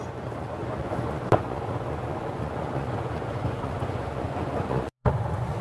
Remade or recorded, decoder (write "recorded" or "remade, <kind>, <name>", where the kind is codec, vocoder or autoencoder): remade, vocoder, Vocos